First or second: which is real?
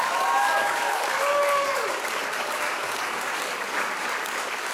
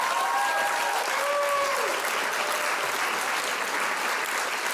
second